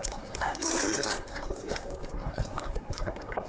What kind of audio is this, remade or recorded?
remade